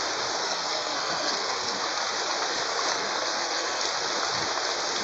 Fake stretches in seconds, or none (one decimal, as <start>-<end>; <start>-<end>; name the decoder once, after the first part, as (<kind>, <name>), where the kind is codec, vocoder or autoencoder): 0.4-1.8 (codec, SNAC); 2.9-3.8